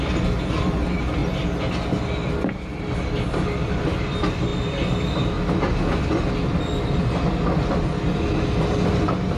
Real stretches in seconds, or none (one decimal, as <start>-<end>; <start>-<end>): 0.0-9.4